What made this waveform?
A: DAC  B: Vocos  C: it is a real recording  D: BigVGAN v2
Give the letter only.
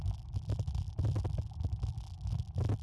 C